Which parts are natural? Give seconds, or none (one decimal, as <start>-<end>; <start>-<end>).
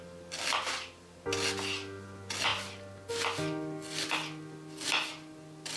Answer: 0.0-5.8